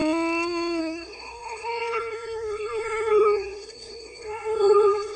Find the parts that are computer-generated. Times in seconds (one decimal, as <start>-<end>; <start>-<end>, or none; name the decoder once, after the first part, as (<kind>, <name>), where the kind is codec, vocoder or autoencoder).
0.8-5.2 (codec, SNAC)